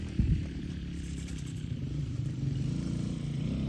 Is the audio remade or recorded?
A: remade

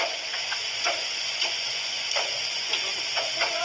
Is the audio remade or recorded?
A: remade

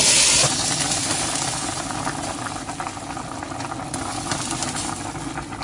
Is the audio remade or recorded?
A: recorded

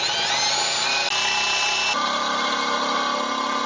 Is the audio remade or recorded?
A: recorded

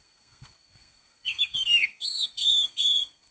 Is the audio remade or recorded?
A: remade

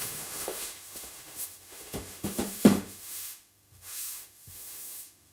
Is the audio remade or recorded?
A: remade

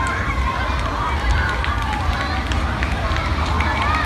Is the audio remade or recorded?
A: recorded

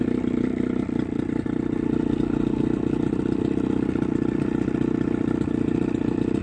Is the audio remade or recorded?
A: recorded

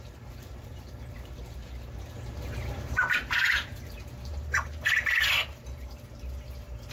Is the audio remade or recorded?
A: remade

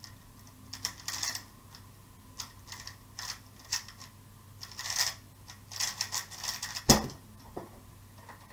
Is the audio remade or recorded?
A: recorded